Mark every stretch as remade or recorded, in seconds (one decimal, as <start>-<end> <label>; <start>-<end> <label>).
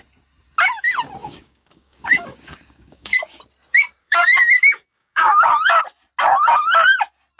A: 0.0-1.2 recorded; 1.2-3.4 remade; 3.4-4.0 recorded; 4.0-5.8 remade; 5.8-7.4 recorded